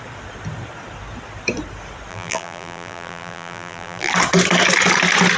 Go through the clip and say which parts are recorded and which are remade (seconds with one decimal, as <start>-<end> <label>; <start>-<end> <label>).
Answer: 0.0-2.1 recorded; 2.1-4.1 remade; 4.1-5.4 recorded